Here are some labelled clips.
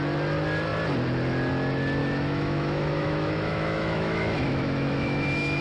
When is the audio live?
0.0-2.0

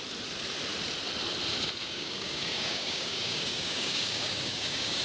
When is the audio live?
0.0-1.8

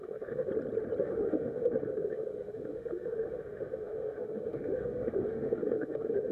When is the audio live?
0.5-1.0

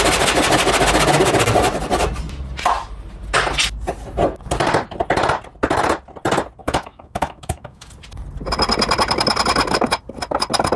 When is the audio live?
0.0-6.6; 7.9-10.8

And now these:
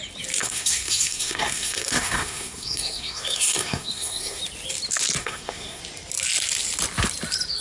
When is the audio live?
0.0-0.4; 4.4-5.2; 5.8-7.6

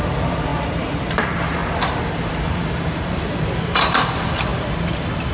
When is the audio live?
0.5-1.1; 1.6-2.4; 4.5-5.3